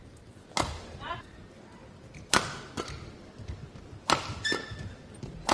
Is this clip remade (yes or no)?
no